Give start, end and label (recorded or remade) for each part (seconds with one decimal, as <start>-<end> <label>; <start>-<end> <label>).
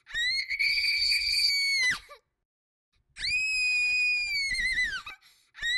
0.0-0.4 recorded; 0.4-1.5 remade; 1.5-5.8 recorded